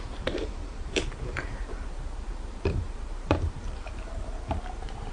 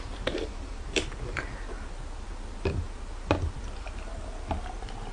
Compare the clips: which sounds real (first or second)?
second